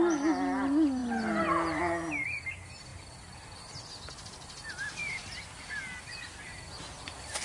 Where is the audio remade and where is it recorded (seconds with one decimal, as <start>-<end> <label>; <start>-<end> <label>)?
0.0-7.4 recorded